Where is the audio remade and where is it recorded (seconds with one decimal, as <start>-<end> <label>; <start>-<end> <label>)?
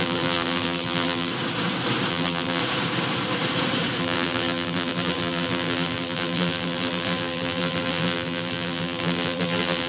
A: 0.0-1.3 remade; 1.3-2.1 recorded; 2.1-2.6 remade; 2.6-4.0 recorded; 4.0-9.9 remade